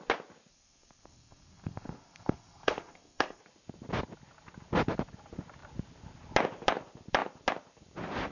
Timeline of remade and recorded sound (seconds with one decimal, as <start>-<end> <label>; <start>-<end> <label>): 0.0-0.5 recorded; 0.5-3.4 remade; 3.4-8.3 recorded